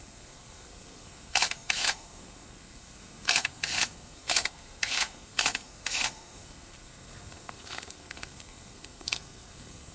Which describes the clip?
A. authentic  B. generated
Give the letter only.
B